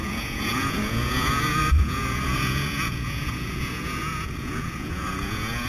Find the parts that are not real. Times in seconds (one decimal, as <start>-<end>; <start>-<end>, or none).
0.0-5.7